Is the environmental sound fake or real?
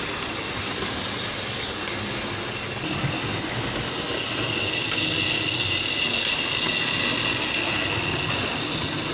real